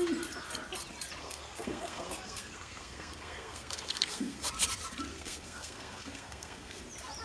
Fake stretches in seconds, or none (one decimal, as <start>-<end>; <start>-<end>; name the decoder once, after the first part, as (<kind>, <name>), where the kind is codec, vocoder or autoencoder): 1.2-4.5 (codec, SNAC); 5.1-6.8